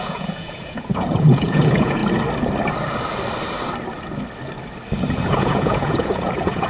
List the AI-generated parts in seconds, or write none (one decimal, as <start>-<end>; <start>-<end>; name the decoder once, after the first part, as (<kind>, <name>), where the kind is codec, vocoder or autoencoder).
0.0-2.0 (vocoder, Vocos); 5.3-6.7